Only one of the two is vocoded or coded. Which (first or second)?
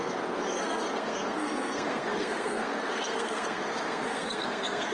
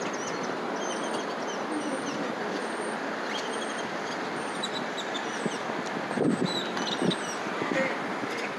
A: first